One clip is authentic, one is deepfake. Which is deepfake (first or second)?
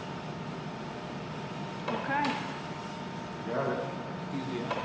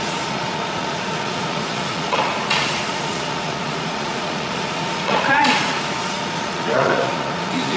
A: second